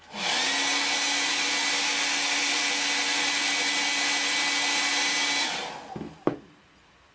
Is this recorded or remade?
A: recorded